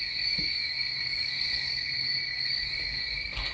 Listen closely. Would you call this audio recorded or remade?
remade